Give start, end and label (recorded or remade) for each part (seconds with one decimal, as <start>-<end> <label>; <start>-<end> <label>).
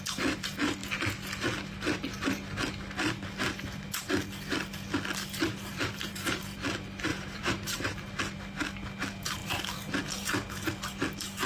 0.0-5.7 recorded; 5.7-6.4 remade; 6.4-7.1 recorded; 7.1-8.1 remade; 8.1-11.5 recorded